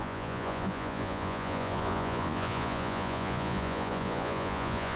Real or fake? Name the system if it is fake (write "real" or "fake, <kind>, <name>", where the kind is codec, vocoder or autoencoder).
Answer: fake, vocoder, Vocos